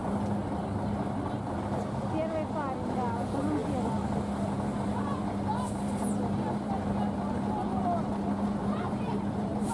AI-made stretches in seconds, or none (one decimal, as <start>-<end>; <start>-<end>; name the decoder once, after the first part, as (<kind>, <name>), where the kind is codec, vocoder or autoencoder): 8.6-9.7 (vocoder, BigVGAN v2)